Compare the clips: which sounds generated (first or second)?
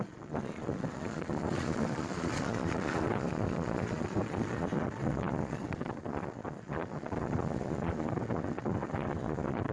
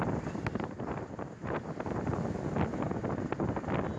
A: first